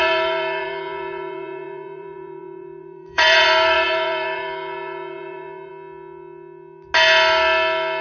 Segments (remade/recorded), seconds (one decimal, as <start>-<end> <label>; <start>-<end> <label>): 0.0-5.7 remade; 5.7-8.0 recorded